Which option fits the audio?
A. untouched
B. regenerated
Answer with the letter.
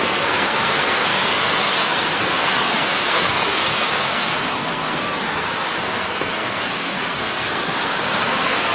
B